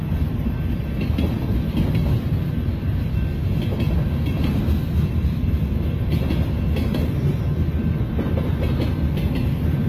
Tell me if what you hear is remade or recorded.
recorded